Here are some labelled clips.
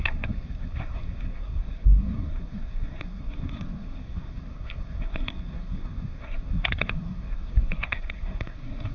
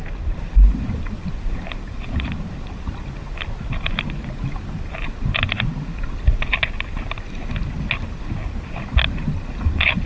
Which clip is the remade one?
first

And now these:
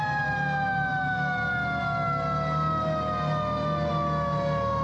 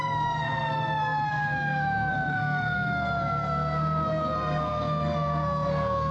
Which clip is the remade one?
second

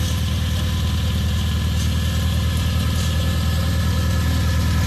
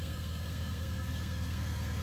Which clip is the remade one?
second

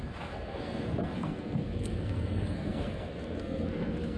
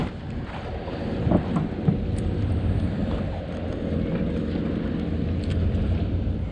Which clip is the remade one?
first